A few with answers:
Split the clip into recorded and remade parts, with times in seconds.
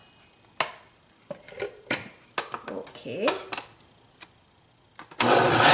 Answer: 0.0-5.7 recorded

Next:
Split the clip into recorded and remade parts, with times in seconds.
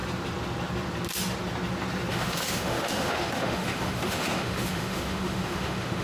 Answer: 0.0-2.1 recorded; 2.1-6.0 remade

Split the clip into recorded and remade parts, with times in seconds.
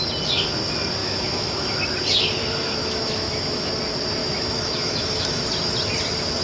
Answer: 0.0-1.0 recorded; 1.0-1.8 remade; 1.8-2.8 recorded; 2.8-3.7 remade; 3.7-4.2 recorded; 4.2-5.4 remade; 5.4-6.4 recorded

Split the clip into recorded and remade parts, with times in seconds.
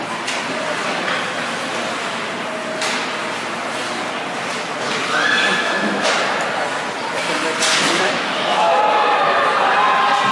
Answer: 0.0-5.6 recorded; 5.6-6.2 remade; 6.2-7.8 recorded; 7.8-8.8 remade; 8.8-10.3 recorded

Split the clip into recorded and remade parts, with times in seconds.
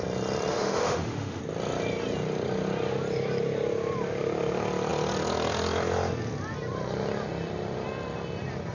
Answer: 0.0-0.5 recorded; 0.5-1.4 remade; 1.4-8.7 recorded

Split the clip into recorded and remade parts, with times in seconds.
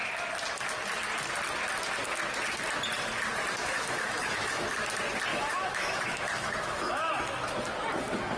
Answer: 0.0-3.6 recorded; 3.6-4.7 remade; 4.7-5.3 recorded; 5.3-7.2 remade; 7.2-8.4 recorded